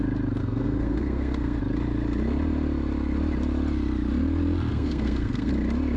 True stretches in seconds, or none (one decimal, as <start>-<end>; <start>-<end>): 0.0-0.4; 1.6-4.7; 5.5-6.0